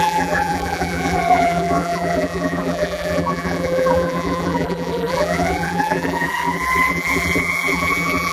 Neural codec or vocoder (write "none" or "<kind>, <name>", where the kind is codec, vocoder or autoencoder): vocoder, BigVGAN v2